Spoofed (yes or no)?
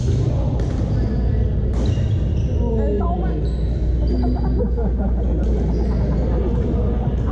no